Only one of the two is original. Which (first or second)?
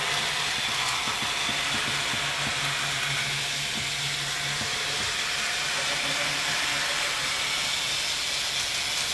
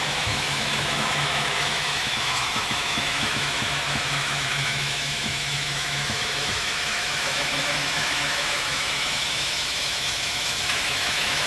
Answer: first